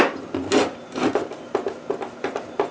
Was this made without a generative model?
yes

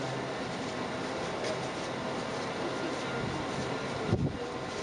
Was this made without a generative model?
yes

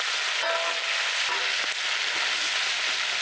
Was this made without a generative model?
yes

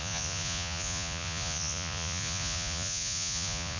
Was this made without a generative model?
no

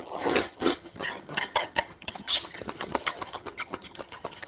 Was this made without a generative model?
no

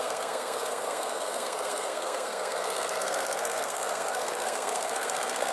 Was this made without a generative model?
no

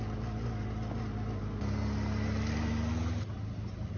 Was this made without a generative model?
yes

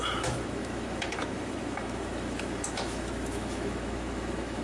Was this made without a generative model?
no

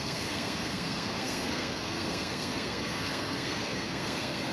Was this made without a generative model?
no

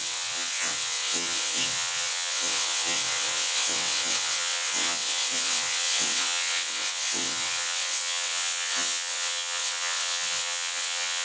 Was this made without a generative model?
no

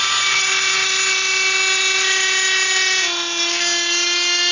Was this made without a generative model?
yes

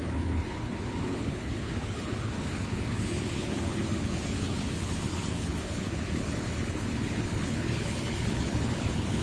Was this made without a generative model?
no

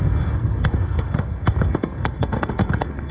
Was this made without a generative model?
no